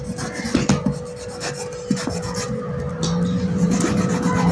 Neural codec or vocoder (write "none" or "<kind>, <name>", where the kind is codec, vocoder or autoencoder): none